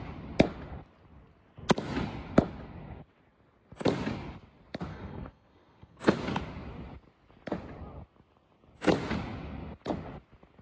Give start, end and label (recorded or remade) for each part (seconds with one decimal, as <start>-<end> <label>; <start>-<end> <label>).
0.0-4.9 recorded; 4.9-6.1 remade; 6.1-10.6 recorded